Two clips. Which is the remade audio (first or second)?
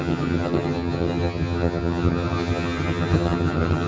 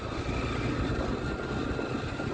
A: first